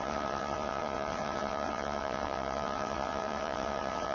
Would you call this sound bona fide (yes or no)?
no